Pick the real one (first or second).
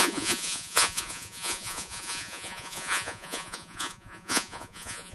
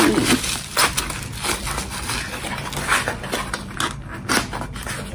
second